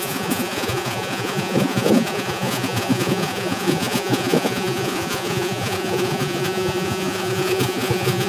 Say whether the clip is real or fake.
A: fake